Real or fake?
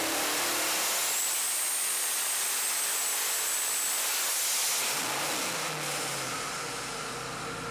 real